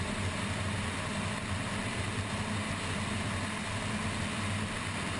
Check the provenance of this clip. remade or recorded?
recorded